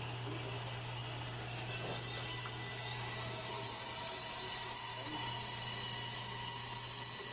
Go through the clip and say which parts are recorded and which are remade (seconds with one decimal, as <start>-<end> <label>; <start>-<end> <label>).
0.0-2.7 recorded; 2.7-5.3 remade; 5.3-7.3 recorded